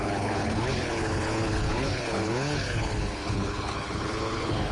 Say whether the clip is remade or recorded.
remade